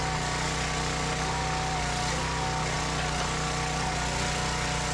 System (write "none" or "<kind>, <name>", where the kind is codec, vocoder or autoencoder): none